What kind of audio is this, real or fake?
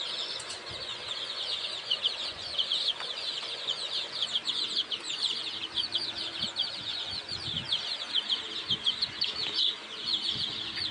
fake